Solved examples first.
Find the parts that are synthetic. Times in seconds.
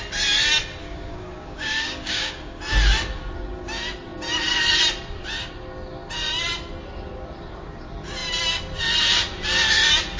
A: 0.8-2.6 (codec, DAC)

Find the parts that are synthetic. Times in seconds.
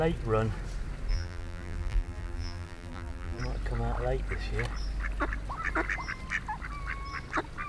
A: 1.1-3.4 (vocoder, BigVGAN v2)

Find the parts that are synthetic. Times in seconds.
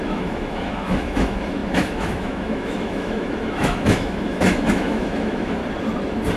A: 0.0-5.6 (autoencoder, DAC-VAE)